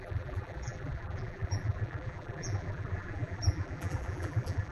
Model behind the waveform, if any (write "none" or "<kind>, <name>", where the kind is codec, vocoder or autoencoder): vocoder, BigVGAN v2